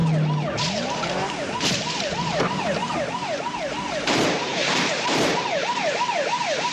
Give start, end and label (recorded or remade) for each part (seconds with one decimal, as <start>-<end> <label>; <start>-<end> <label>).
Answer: 0.0-0.6 recorded; 0.6-6.7 remade